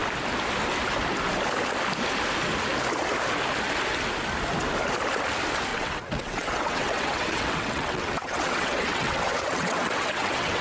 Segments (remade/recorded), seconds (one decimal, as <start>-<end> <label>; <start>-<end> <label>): 0.0-5.7 recorded; 5.7-10.6 remade

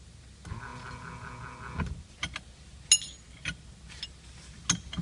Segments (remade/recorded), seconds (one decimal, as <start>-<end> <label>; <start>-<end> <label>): 0.0-5.0 recorded

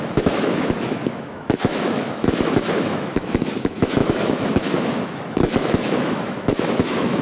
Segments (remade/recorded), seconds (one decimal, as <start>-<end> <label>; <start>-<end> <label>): 0.0-7.2 remade